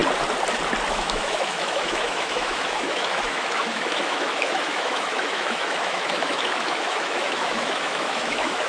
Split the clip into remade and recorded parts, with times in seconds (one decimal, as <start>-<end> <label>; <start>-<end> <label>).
0.0-0.9 recorded; 0.9-8.7 remade